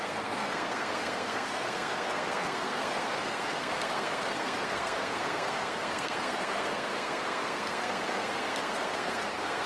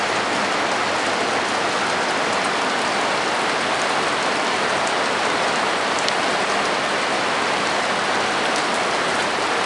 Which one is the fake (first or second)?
first